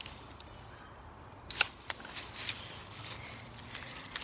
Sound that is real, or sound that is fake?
real